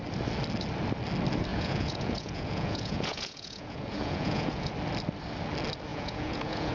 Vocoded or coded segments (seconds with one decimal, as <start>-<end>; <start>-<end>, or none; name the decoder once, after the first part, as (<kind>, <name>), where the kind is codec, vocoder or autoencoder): 1.5-4.7 (vocoder, Vocos); 5.9-6.7